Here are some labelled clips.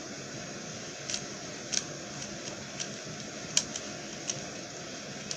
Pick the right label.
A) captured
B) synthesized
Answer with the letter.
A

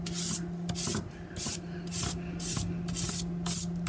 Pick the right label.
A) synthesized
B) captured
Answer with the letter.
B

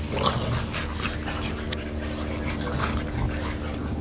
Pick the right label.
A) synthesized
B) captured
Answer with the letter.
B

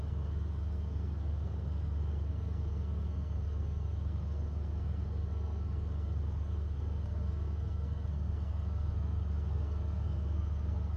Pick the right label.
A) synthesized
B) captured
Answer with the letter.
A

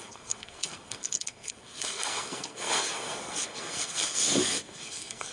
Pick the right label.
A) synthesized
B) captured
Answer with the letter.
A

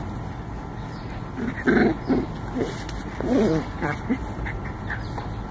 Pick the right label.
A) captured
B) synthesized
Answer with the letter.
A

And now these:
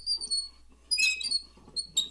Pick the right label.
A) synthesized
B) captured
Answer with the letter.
B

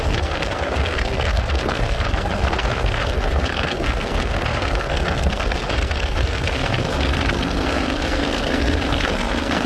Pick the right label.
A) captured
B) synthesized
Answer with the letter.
B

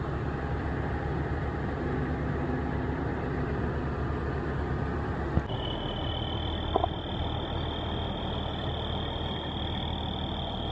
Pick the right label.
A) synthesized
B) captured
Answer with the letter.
B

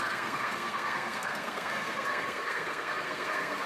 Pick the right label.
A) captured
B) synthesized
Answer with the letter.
B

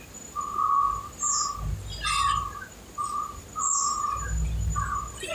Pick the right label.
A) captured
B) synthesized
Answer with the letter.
A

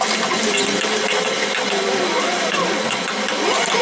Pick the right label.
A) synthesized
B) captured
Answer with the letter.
B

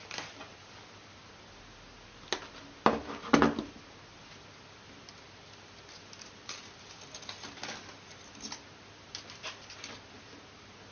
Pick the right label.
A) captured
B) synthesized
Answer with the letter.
A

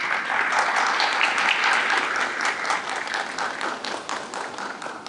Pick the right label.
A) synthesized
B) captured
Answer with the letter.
B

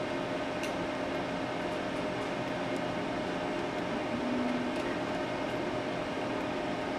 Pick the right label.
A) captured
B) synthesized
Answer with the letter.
A